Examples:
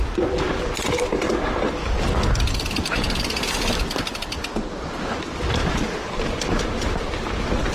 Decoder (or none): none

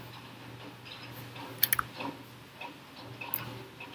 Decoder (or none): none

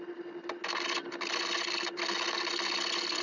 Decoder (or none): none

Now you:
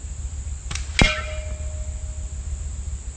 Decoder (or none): none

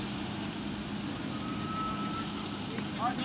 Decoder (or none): none